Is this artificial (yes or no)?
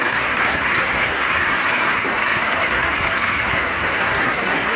yes